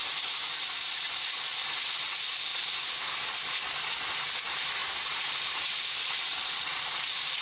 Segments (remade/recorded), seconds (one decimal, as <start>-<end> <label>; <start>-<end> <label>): 0.0-2.5 recorded; 2.5-3.0 remade; 3.0-4.8 recorded; 4.8-7.4 remade